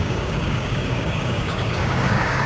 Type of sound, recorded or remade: remade